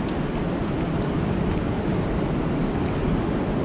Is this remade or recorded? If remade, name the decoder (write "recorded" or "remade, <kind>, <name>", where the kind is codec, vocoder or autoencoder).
recorded